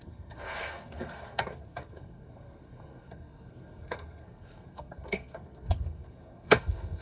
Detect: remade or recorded remade